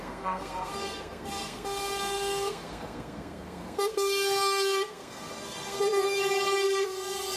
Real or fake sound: fake